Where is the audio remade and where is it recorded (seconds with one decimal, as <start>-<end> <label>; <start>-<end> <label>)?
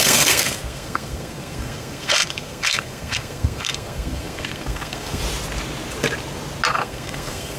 0.0-5.2 remade; 5.2-6.7 recorded; 6.7-7.6 remade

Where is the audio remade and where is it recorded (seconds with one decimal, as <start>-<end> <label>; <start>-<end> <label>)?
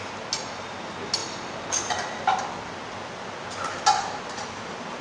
0.0-5.0 recorded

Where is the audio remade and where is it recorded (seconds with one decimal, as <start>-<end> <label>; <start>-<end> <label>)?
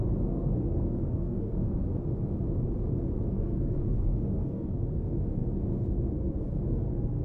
0.0-1.9 remade; 1.9-3.3 recorded; 3.3-7.2 remade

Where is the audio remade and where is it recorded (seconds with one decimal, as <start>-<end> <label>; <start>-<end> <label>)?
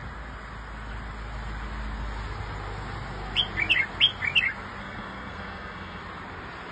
0.0-4.8 recorded; 4.8-6.0 remade; 6.0-6.7 recorded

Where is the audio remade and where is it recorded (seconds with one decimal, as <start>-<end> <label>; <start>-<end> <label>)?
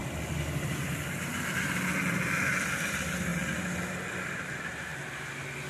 0.0-5.7 recorded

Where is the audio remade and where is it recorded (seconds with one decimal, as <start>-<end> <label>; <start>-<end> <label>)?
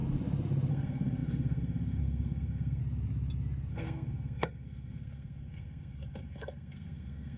0.0-0.7 recorded; 0.7-2.8 remade; 2.8-3.7 recorded; 3.7-7.4 remade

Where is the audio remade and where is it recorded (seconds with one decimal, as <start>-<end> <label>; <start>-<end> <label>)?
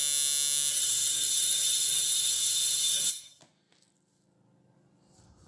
0.0-0.7 recorded; 0.7-3.4 remade; 3.4-5.5 recorded